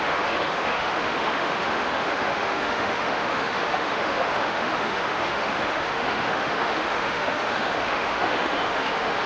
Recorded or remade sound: remade